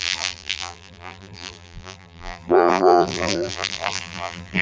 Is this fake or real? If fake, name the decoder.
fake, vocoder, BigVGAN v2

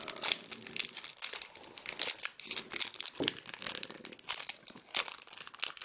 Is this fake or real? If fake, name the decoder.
real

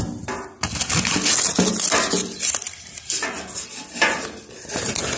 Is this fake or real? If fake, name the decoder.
real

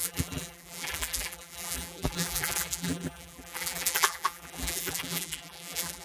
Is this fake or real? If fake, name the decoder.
fake, vocoder, BigVGAN v2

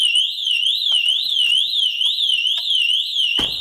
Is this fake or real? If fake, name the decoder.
real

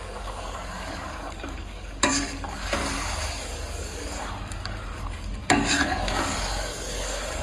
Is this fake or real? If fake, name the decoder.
fake, codec, DAC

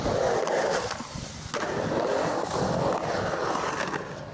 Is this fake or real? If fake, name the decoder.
real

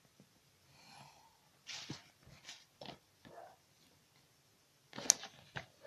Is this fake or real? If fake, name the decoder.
real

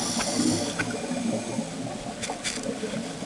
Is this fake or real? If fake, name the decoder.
real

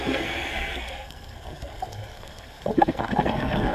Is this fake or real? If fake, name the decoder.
fake, codec, SNAC